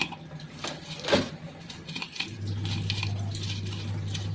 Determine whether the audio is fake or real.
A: real